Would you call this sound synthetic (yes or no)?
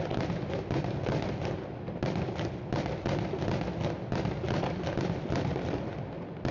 no